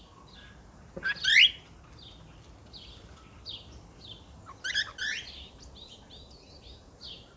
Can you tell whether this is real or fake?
real